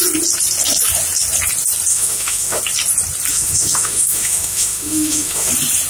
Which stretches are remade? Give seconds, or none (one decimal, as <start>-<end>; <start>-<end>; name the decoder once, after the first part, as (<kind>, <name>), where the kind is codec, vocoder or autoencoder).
1.9-2.6 (autoencoder, DAC-VAE); 3.3-5.5